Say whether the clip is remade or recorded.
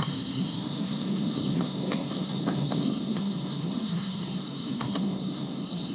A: remade